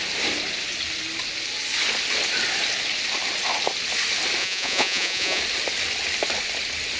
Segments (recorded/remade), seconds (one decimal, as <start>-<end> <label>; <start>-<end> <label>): 0.0-4.4 recorded; 4.4-5.4 remade; 5.4-7.0 recorded